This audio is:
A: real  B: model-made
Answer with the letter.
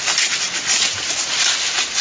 A